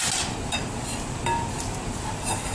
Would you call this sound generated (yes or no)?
no